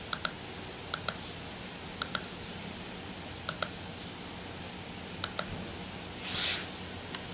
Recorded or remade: recorded